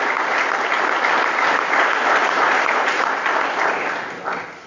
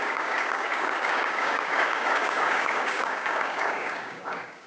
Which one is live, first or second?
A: first